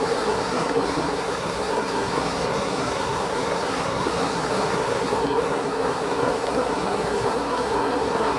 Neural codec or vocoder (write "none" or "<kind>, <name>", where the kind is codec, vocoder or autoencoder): codec, SNAC